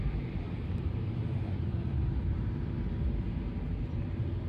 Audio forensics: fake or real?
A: fake